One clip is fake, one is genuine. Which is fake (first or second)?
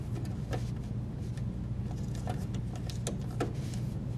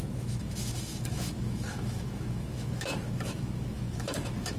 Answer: second